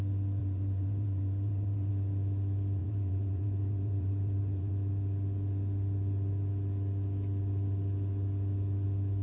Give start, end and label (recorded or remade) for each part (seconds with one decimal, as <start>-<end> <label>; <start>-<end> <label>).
0.0-0.4 recorded; 0.4-1.9 remade; 1.9-2.8 recorded; 2.8-4.7 remade; 4.7-9.2 recorded